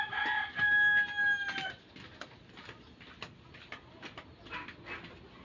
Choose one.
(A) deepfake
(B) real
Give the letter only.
B